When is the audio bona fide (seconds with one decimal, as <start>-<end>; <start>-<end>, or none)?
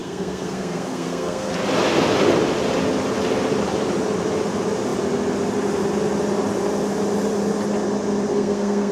1.5-8.3